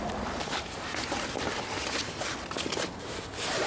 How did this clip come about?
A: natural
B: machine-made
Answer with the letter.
A